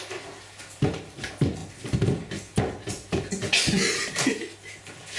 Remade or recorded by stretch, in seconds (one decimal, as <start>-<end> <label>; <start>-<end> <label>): 0.0-5.2 recorded